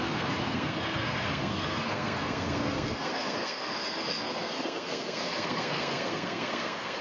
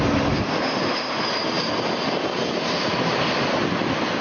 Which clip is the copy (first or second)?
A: first